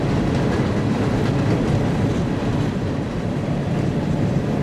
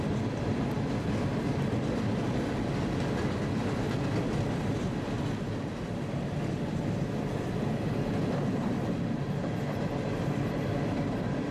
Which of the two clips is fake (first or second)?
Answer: first